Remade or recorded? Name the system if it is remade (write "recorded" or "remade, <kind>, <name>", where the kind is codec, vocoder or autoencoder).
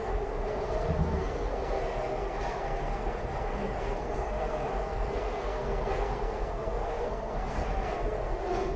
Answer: remade, codec, SNAC